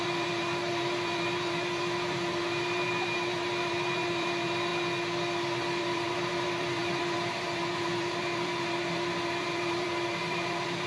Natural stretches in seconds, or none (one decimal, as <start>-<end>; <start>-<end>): 4.7-5.8